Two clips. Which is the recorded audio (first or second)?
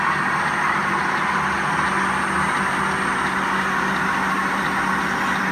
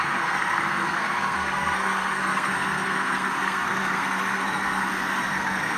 first